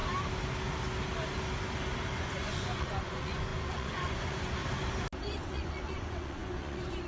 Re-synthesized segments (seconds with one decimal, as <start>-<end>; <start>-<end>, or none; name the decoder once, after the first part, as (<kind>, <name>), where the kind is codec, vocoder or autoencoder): 2.2-4.6 (vocoder, Vocos); 5.2-7.1